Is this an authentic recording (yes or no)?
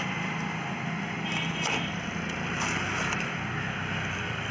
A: yes